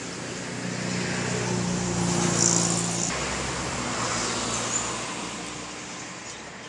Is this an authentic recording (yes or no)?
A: yes